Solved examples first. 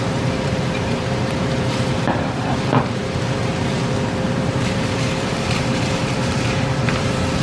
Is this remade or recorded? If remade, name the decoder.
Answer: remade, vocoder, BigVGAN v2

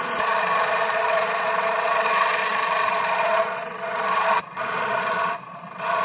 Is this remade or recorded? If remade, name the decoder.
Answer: remade, vocoder, Vocos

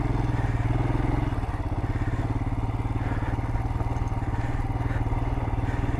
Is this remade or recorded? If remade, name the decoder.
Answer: recorded